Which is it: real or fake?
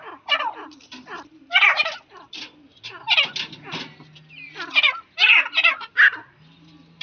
real